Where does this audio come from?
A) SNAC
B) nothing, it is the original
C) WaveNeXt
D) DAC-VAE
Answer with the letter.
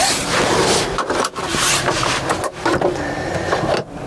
B